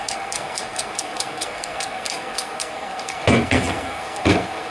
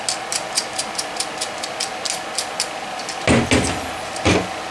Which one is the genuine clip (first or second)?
second